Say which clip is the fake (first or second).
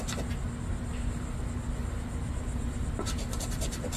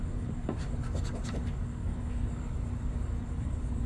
second